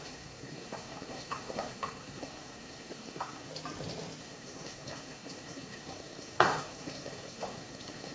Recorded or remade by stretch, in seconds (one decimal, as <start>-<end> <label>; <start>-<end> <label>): 0.0-3.5 remade; 3.5-4.2 recorded; 4.2-8.1 remade